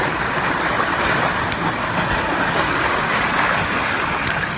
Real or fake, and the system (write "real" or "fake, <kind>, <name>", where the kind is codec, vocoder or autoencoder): real